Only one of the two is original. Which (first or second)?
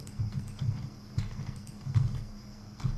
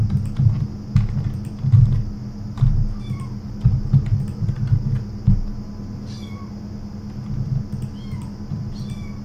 second